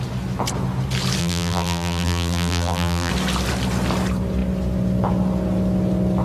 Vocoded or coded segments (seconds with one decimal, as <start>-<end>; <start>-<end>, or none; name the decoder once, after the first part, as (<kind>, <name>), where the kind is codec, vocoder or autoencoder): 1.2-3.1 (vocoder, BigVGAN v2)